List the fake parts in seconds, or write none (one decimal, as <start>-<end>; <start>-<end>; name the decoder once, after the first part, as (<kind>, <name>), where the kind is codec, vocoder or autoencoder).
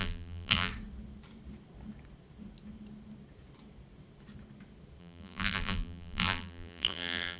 0.0-0.7 (vocoder, BigVGAN v2); 5.0-7.4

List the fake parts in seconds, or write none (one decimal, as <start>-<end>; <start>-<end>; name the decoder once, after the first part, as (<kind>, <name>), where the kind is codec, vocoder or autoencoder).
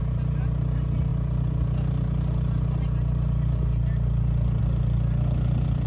none